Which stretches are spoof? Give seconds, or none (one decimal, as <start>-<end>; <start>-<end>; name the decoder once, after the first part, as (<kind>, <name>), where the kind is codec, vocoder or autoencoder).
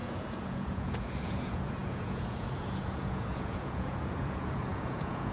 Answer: 0.0-5.3 (vocoder, Vocos)